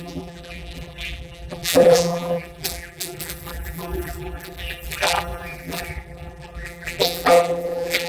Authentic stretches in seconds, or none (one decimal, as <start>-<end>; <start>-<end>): none